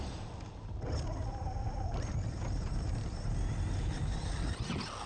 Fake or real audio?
real